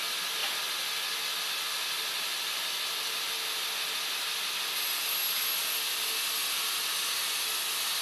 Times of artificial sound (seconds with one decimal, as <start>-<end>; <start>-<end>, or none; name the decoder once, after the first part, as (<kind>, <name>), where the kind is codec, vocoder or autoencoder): none